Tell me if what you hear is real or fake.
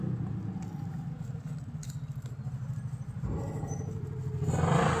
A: real